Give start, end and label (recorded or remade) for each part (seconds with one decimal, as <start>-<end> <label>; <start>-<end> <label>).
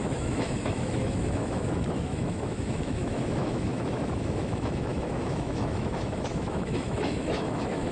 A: 0.0-7.9 remade